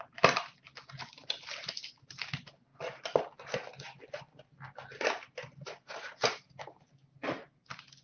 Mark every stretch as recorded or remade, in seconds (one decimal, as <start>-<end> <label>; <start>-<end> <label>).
0.0-2.7 remade; 2.7-5.9 recorded; 5.9-8.0 remade